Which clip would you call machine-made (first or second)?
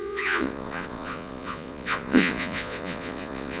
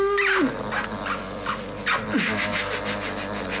first